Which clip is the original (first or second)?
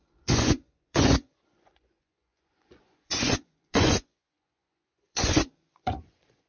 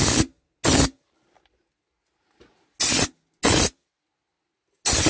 second